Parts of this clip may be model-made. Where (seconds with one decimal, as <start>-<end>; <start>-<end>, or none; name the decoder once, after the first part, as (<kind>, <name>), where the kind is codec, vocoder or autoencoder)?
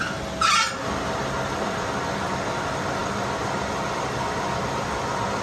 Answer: none